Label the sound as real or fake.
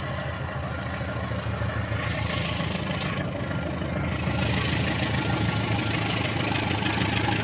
real